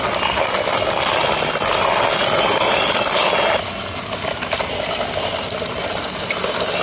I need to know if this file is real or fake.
real